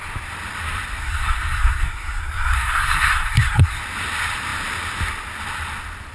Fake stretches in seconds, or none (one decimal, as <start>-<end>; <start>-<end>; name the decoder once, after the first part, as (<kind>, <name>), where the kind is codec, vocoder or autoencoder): 1.0-3.8 (codec, SNAC)